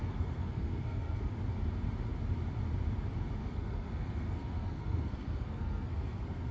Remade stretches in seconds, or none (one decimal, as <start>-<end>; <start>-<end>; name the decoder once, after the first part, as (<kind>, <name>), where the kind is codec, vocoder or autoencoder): 0.0-1.3 (codec, SNAC); 3.4-6.5